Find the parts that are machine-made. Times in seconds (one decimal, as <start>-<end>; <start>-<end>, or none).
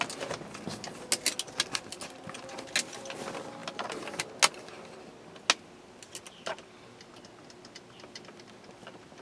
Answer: none